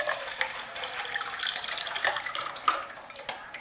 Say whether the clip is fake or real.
fake